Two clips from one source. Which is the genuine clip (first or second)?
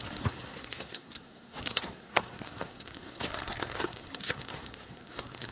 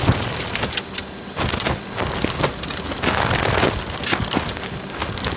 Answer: second